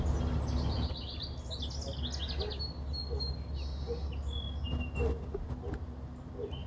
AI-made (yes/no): no